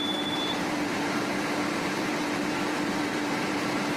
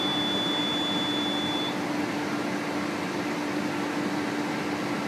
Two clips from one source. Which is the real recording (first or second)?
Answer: second